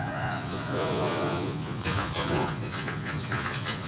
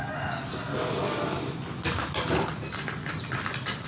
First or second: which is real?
second